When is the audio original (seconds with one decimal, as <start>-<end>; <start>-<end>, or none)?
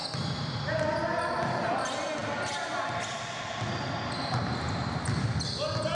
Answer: 1.0-5.9